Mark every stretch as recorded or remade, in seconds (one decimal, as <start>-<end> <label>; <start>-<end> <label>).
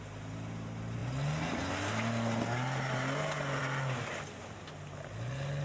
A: 0.0-5.6 recorded